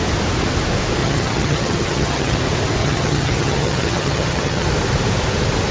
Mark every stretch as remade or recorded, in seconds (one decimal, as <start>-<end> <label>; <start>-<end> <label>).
0.0-1.0 recorded; 1.0-2.4 remade; 2.4-2.8 recorded; 2.8-4.7 remade; 4.7-5.7 recorded